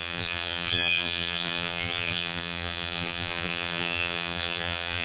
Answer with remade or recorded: remade